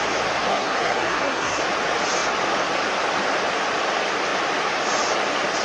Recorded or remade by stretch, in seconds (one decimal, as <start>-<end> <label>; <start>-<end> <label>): 0.0-0.5 recorded; 0.5-1.6 remade; 1.6-5.6 recorded